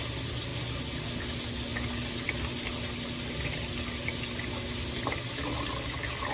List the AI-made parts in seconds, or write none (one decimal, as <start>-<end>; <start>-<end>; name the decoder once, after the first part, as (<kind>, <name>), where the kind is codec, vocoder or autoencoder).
none